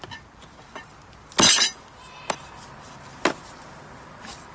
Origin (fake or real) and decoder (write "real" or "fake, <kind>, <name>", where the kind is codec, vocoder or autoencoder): real